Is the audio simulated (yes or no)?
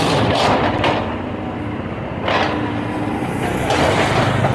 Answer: no